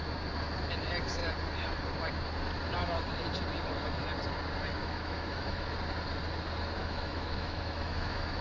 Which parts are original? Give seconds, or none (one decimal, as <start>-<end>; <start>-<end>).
0.0-4.8; 5.7-6.8